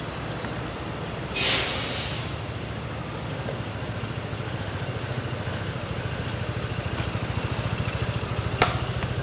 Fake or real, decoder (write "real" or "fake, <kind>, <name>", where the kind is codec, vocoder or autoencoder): real